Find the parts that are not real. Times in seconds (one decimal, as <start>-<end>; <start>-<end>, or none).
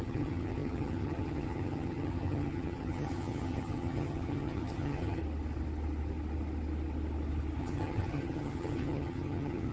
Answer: 0.0-5.2; 7.6-9.7